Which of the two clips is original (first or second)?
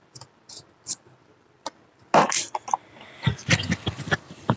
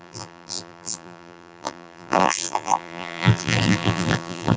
first